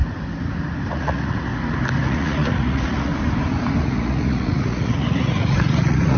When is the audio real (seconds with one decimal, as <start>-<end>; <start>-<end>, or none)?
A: 0.0-0.9; 1.5-2.0; 3.1-3.8